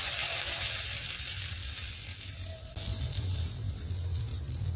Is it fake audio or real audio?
real